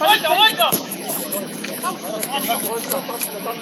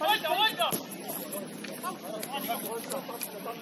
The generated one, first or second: first